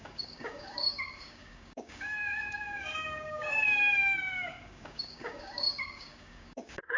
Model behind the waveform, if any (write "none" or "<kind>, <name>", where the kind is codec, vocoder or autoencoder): codec, DAC